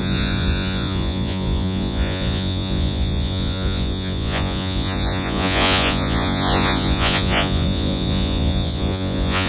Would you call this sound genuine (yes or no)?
no